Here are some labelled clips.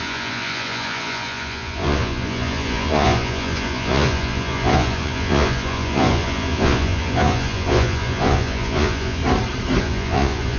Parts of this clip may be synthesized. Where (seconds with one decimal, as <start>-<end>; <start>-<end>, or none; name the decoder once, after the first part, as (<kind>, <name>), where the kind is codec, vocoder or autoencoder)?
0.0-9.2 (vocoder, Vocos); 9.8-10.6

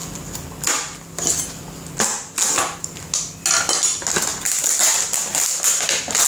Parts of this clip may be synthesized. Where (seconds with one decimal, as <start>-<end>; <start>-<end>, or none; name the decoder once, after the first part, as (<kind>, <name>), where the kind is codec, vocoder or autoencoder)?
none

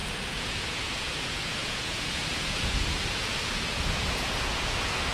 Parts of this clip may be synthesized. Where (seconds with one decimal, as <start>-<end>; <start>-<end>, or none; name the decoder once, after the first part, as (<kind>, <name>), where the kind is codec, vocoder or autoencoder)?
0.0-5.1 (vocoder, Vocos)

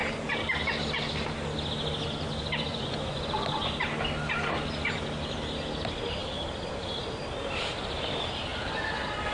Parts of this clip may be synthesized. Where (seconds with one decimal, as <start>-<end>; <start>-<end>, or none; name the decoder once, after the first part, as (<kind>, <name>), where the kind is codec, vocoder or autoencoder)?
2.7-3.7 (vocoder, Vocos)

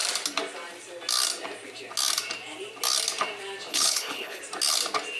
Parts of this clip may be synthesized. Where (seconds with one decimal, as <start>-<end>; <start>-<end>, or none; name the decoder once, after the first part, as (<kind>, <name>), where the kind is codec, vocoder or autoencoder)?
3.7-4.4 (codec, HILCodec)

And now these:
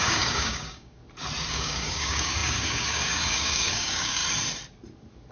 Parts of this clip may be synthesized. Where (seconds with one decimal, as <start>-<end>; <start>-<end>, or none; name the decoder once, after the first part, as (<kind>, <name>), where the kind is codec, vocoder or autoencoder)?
0.0-1.0 (codec, DAC); 1.5-4.2

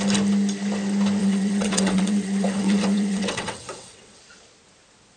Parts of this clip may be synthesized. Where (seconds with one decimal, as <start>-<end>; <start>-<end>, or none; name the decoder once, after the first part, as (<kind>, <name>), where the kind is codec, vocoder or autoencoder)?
1.2-4.2 (vocoder, WaveNeXt)

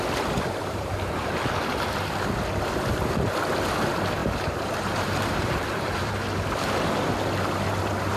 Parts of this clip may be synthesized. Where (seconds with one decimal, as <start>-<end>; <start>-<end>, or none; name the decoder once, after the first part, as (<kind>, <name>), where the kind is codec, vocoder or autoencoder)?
0.6-1.4 (vocoder, BigVGAN v2); 4.2-6.1